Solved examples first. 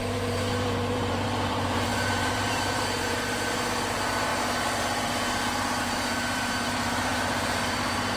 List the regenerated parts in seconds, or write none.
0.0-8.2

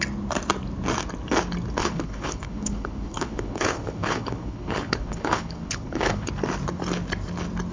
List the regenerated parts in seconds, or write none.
1.8-6.3

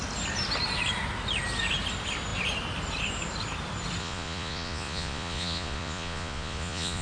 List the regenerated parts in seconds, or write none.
4.0-7.0

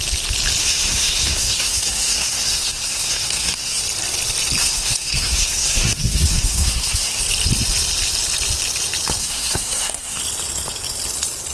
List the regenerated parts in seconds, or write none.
0.6-3.8; 4.6-7.2; 9.2-10.2

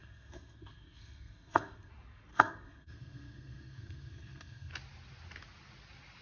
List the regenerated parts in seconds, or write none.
0.0-1.9; 2.3-4.7

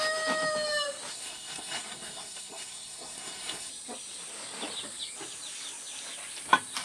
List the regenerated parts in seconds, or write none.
1.1-3.7